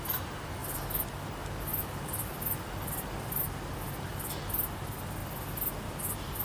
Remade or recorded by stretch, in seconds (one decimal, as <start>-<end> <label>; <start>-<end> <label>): 0.0-1.7 recorded; 1.7-3.4 remade; 3.4-5.2 recorded; 5.2-6.0 remade; 6.0-6.4 recorded